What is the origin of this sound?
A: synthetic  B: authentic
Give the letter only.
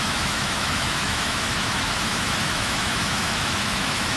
A